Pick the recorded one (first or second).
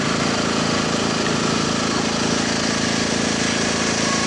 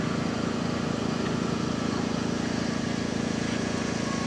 first